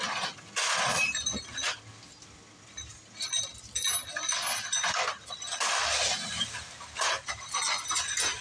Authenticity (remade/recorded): recorded